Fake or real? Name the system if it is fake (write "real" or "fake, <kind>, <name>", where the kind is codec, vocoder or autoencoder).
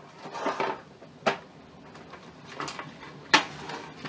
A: real